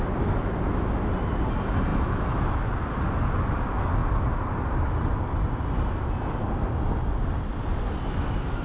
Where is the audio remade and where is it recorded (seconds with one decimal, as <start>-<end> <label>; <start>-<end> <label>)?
0.0-8.6 recorded